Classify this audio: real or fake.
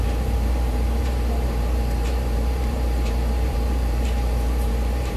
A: fake